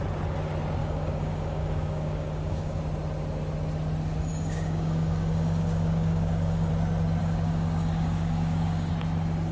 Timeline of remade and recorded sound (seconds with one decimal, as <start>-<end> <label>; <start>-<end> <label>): 0.0-0.8 recorded; 0.8-2.8 remade; 2.8-4.3 recorded; 4.3-6.7 remade; 6.7-7.2 recorded; 7.2-8.9 remade; 8.9-9.5 recorded